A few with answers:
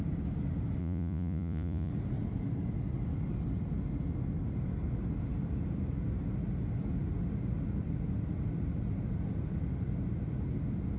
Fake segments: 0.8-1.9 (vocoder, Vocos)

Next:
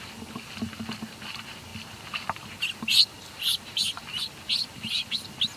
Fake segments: none

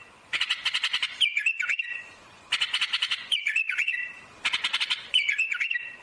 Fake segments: 0.0-3.9 (vocoder, Vocos); 4.8-6.0

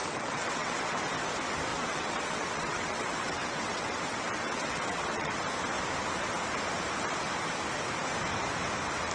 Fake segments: 0.0-1.0 (vocoder, WaveNeXt); 1.7-5.4

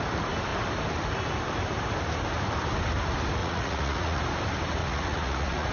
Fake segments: 3.4-4.2 (vocoder, Vocos); 4.8-5.7

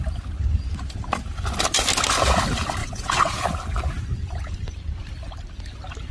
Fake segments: 2.8-3.3 (vocoder, WaveNeXt)

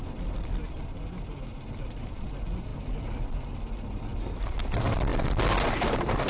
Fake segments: none